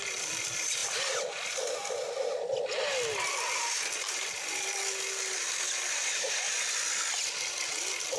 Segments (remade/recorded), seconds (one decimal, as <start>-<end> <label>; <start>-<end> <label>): 0.0-8.2 recorded